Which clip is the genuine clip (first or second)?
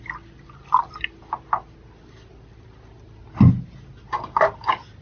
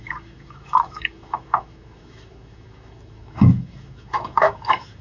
first